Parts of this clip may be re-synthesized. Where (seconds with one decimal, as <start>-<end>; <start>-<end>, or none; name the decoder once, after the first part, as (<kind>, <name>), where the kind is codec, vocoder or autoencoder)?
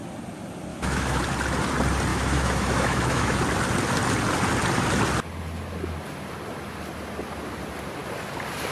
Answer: 0.7-1.2 (autoencoder, DAC-VAE); 2.1-3.4